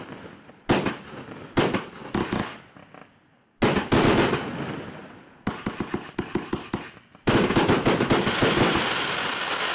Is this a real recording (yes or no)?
yes